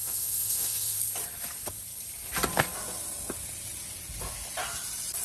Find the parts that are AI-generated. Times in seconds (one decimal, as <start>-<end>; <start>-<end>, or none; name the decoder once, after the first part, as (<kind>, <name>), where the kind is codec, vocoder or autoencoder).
0.0-1.0 (autoencoder, DAC-VAE)